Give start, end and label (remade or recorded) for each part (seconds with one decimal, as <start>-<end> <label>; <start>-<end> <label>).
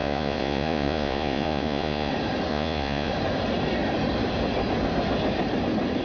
0.0-2.1 remade; 2.1-2.5 recorded; 2.5-3.1 remade; 3.1-6.0 recorded